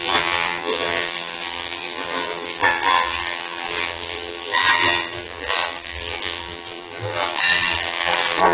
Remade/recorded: remade